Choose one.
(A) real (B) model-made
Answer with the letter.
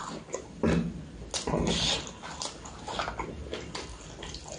A